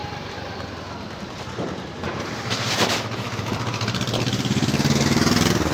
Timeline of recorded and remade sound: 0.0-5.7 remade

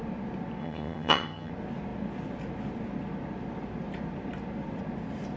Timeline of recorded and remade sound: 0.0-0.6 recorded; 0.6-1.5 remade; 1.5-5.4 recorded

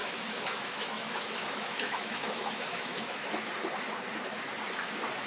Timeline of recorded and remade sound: 0.0-3.2 remade; 3.2-5.3 recorded

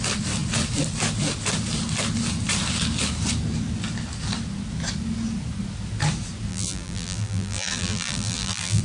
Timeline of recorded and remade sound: 0.0-6.5 recorded; 6.5-8.8 remade

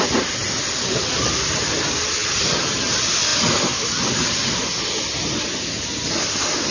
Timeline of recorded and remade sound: 0.0-2.2 recorded; 2.2-2.7 remade; 2.7-6.7 recorded